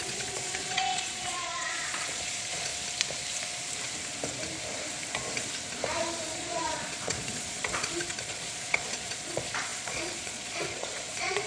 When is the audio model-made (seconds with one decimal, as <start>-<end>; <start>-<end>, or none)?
0.0-2.7; 6.3-11.5